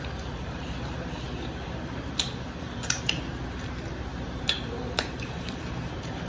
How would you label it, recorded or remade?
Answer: remade